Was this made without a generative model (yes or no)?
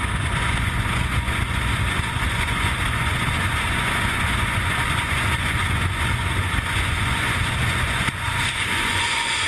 no